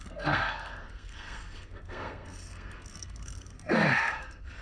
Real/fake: fake